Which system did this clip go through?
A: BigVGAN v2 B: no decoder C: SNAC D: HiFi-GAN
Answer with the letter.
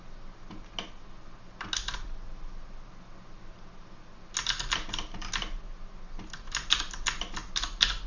B